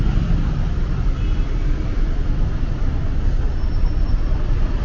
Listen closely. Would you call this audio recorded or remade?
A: recorded